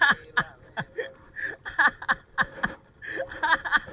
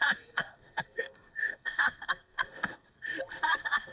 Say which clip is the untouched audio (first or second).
first